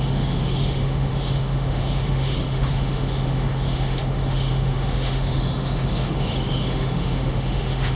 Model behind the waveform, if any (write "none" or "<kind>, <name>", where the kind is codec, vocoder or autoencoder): autoencoder, DAC-VAE